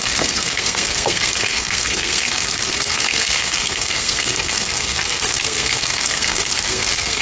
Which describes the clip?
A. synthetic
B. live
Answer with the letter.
A